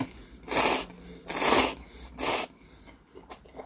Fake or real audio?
real